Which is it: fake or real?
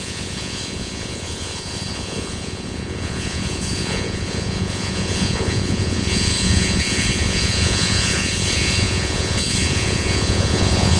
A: fake